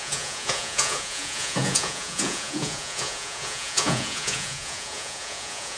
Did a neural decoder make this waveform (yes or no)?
yes